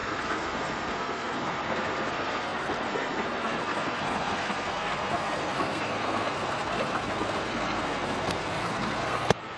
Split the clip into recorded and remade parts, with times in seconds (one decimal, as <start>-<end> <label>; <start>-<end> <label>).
0.0-9.6 remade